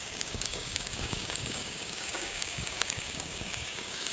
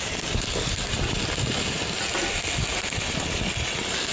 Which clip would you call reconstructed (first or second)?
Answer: first